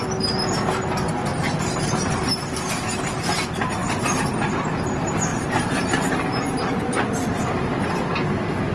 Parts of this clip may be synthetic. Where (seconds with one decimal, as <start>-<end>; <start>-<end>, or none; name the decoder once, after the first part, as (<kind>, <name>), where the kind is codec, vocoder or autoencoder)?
1.3-2.4 (vocoder, BigVGAN v2); 3.8-4.6; 5.3-7.7